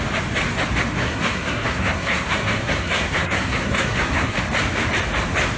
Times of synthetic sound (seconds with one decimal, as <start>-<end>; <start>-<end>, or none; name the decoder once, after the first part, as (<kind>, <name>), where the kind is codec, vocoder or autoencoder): 1.0-4.4 (codec, SNAC)